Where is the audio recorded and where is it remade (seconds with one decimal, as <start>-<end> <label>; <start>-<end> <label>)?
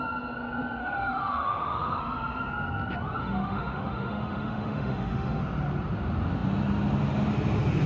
0.0-0.8 recorded; 0.8-2.0 remade; 2.0-3.2 recorded; 3.2-5.4 remade; 5.4-7.9 recorded